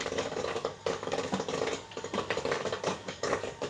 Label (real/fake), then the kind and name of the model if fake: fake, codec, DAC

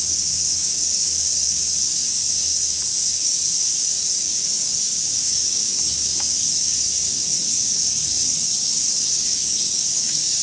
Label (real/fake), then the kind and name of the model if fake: fake, codec, DAC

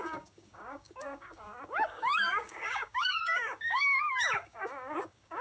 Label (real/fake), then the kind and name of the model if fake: fake, codec, DAC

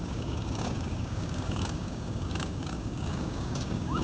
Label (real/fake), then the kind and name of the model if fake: fake, codec, DAC